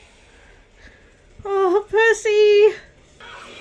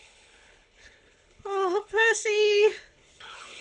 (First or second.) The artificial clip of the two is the second